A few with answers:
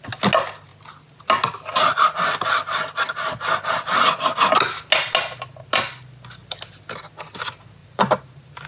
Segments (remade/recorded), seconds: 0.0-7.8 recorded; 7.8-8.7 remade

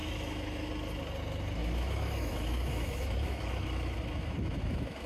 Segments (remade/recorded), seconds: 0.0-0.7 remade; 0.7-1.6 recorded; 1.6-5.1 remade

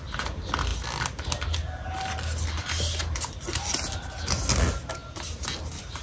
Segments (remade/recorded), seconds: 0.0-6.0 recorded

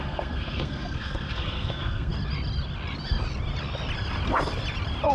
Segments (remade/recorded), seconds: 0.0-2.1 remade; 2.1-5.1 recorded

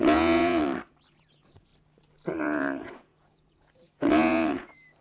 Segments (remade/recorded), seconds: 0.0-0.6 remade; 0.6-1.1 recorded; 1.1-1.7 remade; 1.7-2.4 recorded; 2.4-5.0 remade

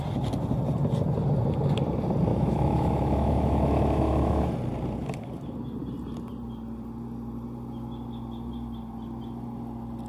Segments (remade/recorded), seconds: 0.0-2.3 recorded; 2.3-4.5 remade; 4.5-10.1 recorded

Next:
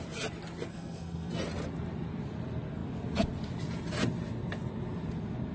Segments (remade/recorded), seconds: 0.0-0.7 recorded; 0.7-1.3 remade; 1.3-5.5 recorded

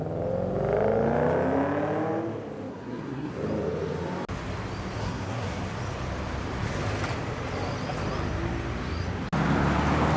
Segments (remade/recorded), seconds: 0.0-2.7 recorded; 2.7-3.3 remade; 3.3-5.0 recorded; 5.0-5.6 remade; 5.6-10.2 recorded